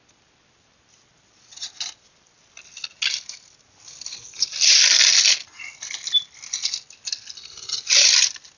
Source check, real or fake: real